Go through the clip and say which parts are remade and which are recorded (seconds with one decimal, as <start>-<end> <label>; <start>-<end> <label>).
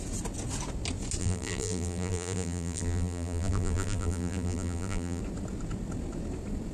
0.0-1.2 recorded; 1.2-5.2 remade; 5.2-6.7 recorded